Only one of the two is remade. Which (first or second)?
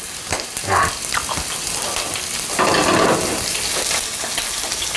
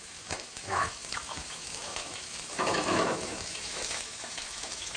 second